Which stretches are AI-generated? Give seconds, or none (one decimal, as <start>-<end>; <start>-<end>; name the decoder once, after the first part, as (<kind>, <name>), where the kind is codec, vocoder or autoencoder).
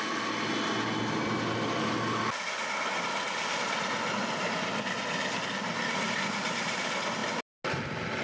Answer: none